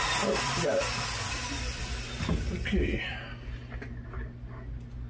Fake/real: real